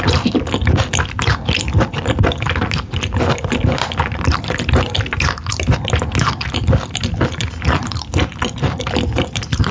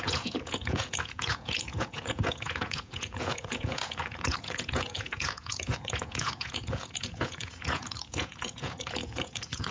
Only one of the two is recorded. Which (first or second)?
first